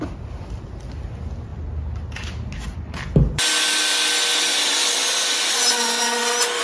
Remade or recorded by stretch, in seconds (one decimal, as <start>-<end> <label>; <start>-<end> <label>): 0.0-6.6 recorded